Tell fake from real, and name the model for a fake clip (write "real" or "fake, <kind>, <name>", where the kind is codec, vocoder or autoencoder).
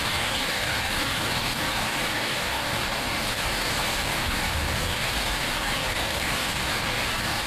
fake, codec, DAC